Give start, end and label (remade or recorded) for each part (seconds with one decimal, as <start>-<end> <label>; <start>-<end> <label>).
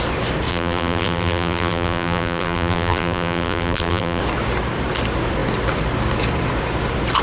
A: 0.0-0.5 recorded; 0.5-4.2 remade; 4.2-7.2 recorded